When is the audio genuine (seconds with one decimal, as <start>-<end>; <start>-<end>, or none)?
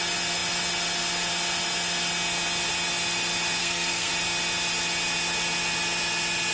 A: 0.0-3.6; 4.1-6.5